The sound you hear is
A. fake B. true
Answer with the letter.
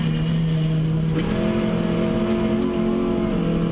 B